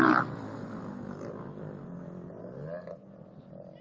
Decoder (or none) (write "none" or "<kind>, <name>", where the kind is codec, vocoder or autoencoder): none